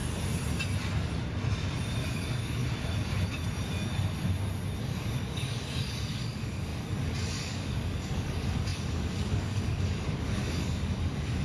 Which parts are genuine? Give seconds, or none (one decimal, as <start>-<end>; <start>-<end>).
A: 0.0-2.1; 2.6-4.8